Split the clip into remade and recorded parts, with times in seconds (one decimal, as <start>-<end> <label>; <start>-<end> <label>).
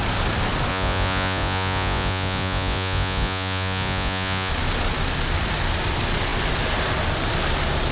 0.0-0.7 recorded; 0.7-4.5 remade; 4.5-7.9 recorded